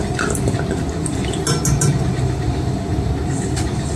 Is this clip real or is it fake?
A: real